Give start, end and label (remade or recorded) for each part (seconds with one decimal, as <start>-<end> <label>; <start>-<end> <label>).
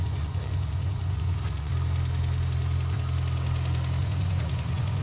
0.0-1.7 remade; 1.7-4.0 recorded; 4.0-5.0 remade